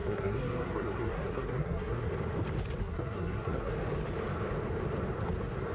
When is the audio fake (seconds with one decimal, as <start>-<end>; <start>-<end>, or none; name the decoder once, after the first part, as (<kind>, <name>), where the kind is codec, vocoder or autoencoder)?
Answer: 0.0-2.1 (codec, SNAC); 2.8-3.7